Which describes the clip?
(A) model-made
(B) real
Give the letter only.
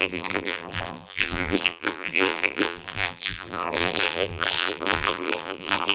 A